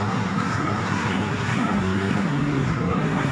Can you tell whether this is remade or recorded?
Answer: remade